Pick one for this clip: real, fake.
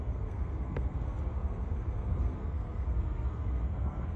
fake